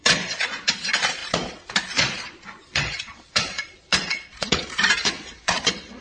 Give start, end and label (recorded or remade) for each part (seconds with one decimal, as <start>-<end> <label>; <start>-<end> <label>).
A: 0.0-6.0 remade